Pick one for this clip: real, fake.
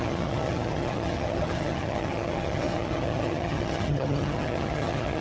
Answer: fake